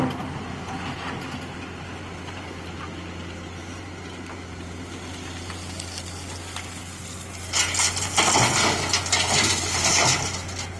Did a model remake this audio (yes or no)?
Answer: no